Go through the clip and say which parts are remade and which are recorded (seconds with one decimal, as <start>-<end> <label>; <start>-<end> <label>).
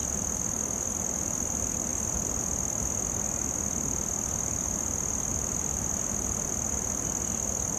0.0-7.8 recorded